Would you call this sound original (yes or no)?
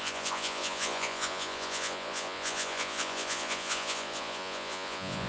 no